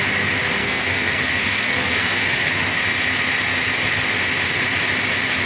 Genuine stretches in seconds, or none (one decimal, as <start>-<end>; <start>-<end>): 0.0-0.6; 2.8-5.5